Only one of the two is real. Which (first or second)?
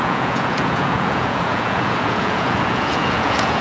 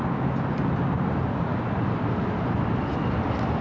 second